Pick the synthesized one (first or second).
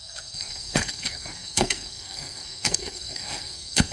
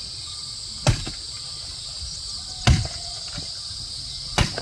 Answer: first